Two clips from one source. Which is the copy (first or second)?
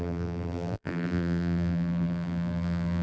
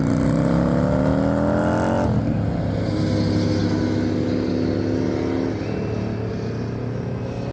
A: first